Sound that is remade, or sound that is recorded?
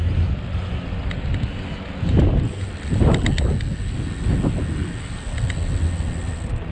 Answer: recorded